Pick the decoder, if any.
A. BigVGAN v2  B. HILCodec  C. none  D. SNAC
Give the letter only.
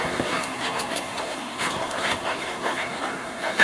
D